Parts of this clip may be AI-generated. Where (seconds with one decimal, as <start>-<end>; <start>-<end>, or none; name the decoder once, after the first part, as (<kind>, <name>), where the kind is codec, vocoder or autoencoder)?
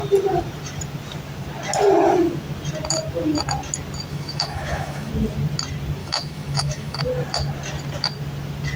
4.1-5.1 (autoencoder, DAC-VAE); 6.0-7.0